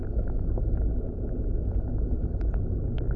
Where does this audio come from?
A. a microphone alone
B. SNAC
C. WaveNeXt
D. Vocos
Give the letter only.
A